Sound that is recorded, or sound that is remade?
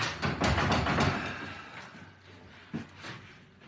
recorded